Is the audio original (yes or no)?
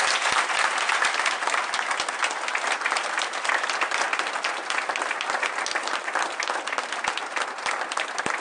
yes